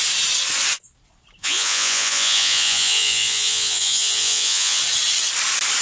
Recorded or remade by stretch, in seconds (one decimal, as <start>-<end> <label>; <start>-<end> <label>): 0.0-1.4 recorded; 1.4-4.8 remade; 4.8-5.8 recorded